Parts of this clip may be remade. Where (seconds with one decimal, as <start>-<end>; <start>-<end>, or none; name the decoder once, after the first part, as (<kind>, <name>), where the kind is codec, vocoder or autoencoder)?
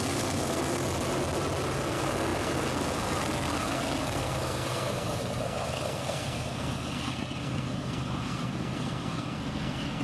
0.0-0.8 (codec, SNAC); 1.8-10.0